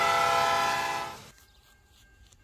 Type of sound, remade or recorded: recorded